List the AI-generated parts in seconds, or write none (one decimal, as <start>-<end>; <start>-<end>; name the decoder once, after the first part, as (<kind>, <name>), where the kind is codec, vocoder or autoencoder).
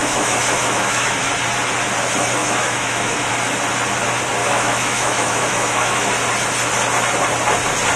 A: 0.0-1.2 (autoencoder, DAC-VAE); 2.4-3.3; 4.4-6.1